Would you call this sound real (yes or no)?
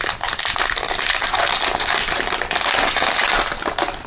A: yes